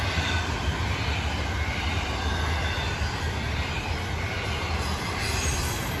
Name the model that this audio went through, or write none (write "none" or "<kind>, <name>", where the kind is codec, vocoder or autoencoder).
none